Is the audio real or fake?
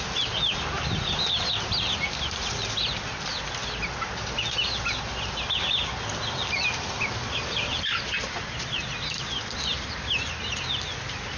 real